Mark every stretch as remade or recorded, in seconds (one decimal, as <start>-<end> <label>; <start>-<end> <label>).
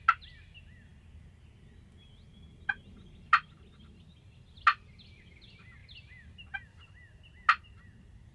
0.0-8.3 recorded